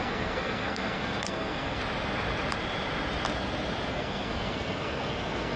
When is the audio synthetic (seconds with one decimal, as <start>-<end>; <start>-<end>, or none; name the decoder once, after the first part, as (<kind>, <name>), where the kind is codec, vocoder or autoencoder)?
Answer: 0.0-1.8 (codec, SNAC); 3.9-5.6